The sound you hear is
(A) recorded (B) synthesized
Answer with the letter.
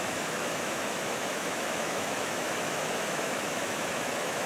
B